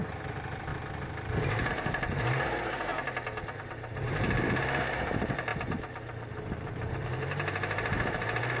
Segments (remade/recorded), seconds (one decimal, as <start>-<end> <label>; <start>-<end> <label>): 0.0-0.7 remade; 0.7-1.7 recorded; 1.7-2.9 remade; 2.9-3.6 recorded; 3.6-8.6 remade